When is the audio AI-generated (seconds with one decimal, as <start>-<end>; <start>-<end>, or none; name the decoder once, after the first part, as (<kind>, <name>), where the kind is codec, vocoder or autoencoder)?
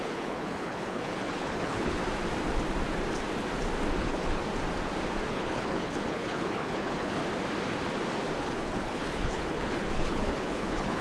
0.0-2.0 (codec, HILCodec); 4.0-4.4; 5.3-7.2; 8.4-11.0